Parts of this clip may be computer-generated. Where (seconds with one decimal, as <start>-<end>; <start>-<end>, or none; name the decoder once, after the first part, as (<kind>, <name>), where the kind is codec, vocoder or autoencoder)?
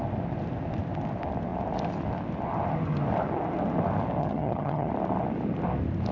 4.2-4.9 (vocoder, HiFi-GAN)